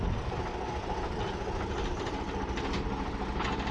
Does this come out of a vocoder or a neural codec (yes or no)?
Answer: no